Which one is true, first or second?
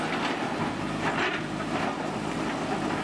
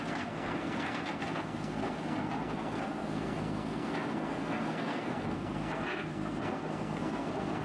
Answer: first